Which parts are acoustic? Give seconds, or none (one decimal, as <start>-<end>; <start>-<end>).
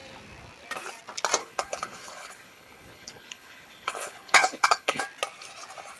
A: 0.0-1.4; 5.0-6.0